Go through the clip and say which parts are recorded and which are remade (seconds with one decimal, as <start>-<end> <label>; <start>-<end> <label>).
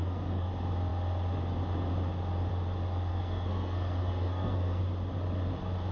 0.0-0.5 remade; 0.5-3.1 recorded; 3.1-4.8 remade; 4.8-5.9 recorded